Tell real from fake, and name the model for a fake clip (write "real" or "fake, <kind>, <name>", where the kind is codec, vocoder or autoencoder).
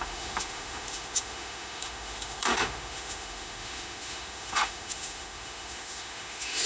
fake, autoencoder, DAC-VAE